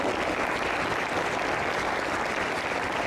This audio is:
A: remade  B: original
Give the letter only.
B